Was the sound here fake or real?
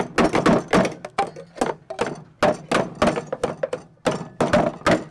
real